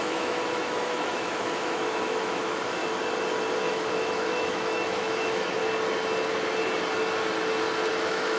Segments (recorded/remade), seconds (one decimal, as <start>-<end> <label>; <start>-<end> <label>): 0.0-2.8 remade; 2.8-3.6 recorded; 3.6-5.6 remade; 5.6-7.9 recorded; 7.9-8.4 remade